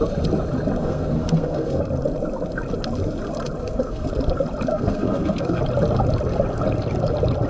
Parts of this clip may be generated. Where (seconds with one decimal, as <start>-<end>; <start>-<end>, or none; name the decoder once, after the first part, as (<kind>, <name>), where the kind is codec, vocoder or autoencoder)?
0.8-1.8 (codec, SNAC); 3.6-4.1; 4.7-5.6